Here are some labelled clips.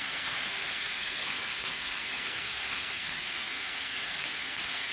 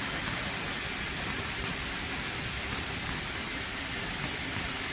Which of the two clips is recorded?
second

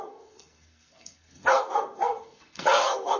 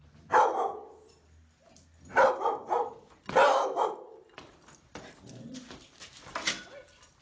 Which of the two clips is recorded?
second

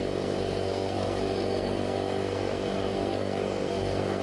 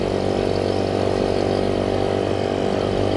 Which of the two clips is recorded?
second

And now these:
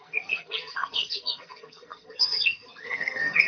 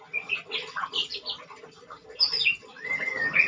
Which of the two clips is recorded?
second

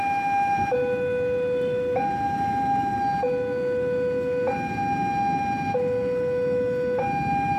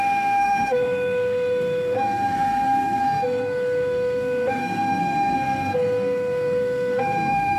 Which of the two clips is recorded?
first